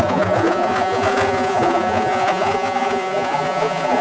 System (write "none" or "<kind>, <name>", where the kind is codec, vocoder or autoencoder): vocoder, Vocos